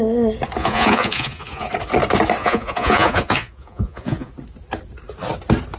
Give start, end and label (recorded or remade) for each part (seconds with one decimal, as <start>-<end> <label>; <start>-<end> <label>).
0.0-0.6 recorded; 0.6-1.7 remade; 1.7-2.4 recorded; 2.4-4.3 remade; 4.3-5.8 recorded